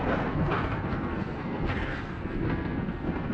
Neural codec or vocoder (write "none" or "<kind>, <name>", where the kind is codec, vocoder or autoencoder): codec, SNAC